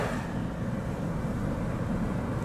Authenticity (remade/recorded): recorded